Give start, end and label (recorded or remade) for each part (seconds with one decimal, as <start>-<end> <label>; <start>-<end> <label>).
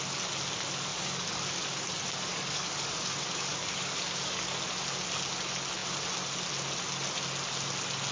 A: 0.0-0.9 recorded; 0.9-1.6 remade; 1.6-2.3 recorded; 2.3-4.5 remade; 4.5-8.1 recorded